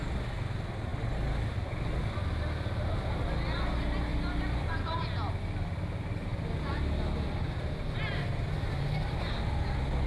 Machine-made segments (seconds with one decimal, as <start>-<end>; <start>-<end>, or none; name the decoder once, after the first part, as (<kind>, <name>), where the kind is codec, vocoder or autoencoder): none